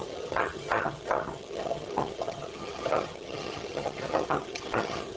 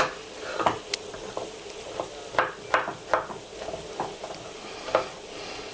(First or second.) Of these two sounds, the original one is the second